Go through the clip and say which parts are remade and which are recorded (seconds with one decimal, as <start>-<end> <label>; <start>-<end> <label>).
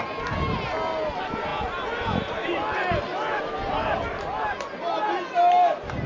0.0-6.1 recorded